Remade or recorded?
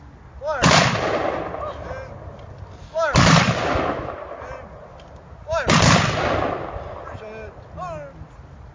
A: recorded